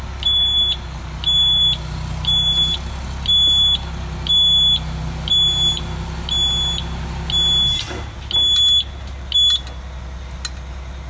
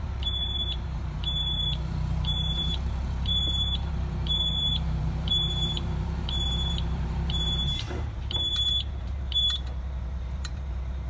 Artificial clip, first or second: second